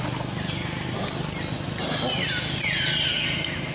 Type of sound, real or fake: real